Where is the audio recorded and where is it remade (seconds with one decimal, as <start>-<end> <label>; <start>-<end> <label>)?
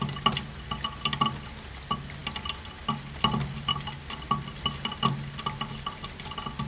0.0-6.7 recorded